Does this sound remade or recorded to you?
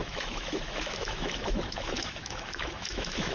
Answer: remade